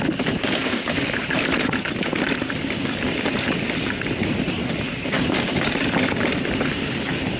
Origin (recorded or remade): recorded